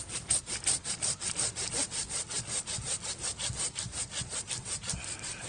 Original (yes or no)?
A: yes